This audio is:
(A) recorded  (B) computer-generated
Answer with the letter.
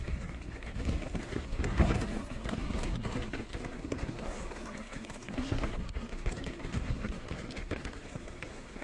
B